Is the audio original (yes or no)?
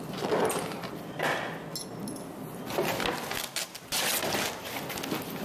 yes